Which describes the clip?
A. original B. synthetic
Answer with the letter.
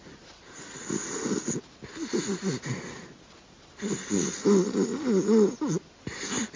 A